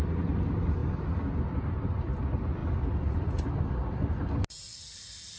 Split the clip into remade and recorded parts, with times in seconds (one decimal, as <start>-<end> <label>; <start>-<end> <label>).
0.0-2.6 recorded; 2.6-4.1 remade; 4.1-5.4 recorded